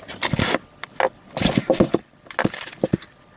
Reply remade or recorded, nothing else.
recorded